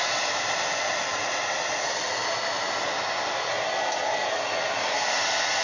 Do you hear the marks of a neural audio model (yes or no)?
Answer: no